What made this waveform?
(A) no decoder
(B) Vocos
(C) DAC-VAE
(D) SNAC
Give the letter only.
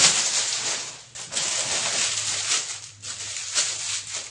A